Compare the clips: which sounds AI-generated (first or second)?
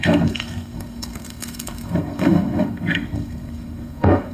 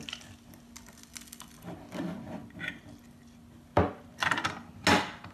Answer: first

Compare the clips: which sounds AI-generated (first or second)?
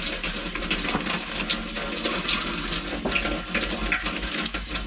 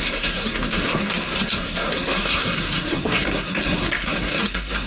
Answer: second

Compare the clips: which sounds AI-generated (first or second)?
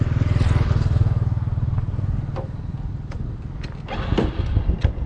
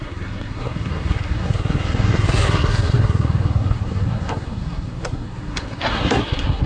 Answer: second